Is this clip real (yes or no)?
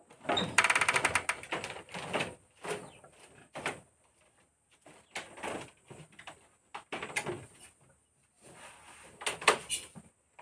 yes